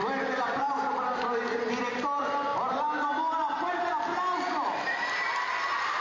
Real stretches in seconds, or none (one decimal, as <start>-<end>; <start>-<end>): 1.2-2.5; 3.1-4.1; 5.3-6.0